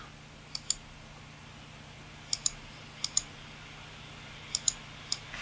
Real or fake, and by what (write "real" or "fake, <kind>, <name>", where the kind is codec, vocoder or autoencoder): real